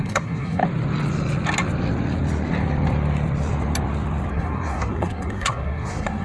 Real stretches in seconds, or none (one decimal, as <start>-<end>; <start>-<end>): 0.6-4.3